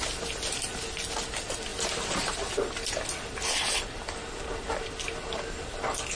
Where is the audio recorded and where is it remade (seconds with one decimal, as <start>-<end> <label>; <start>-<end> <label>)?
0.0-6.2 recorded